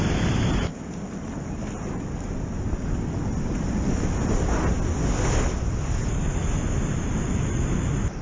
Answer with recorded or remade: recorded